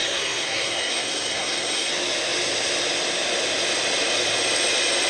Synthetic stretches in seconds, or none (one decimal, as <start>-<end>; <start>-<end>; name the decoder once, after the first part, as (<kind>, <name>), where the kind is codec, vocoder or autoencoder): 0.0-1.9 (codec, SNAC)